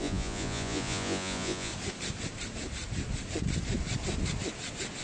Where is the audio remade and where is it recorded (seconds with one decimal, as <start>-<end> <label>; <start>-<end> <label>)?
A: 0.0-1.7 remade; 1.7-5.0 recorded